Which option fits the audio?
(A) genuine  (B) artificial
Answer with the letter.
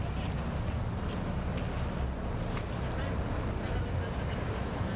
A